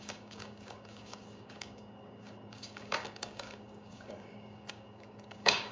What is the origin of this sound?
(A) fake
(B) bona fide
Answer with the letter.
A